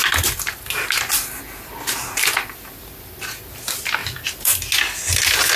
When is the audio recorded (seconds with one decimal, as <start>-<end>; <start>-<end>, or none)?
1.1-2.0; 2.8-4.0; 4.7-5.6